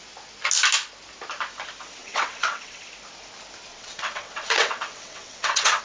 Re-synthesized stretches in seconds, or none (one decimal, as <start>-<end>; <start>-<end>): 2.0-2.9; 3.7-5.8